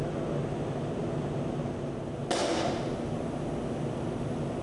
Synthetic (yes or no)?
no